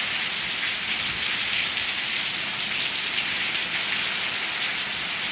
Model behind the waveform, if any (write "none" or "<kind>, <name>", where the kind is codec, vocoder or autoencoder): none